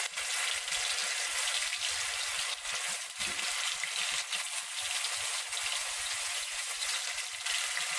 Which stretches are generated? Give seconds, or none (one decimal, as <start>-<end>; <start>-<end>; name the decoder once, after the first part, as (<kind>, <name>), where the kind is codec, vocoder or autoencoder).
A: 5.8-6.9 (vocoder, Vocos)